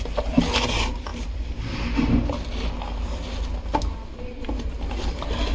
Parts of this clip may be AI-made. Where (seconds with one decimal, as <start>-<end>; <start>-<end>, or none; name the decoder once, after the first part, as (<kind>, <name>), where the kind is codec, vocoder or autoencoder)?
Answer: none